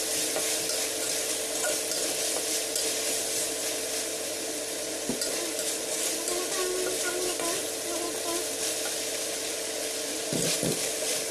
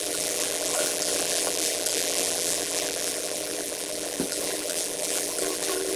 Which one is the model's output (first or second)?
second